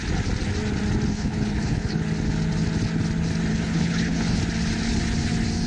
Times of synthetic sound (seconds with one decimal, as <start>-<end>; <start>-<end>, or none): 1.1-2.0; 3.5-4.4

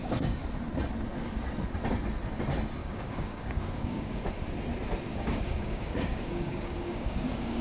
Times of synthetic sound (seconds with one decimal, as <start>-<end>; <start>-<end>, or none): 2.8-4.3; 5.1-7.6